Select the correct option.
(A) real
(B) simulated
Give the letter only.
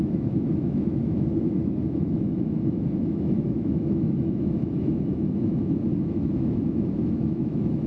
B